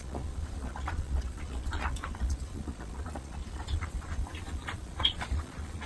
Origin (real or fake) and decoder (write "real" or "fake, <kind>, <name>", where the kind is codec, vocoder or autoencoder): fake, vocoder, Vocos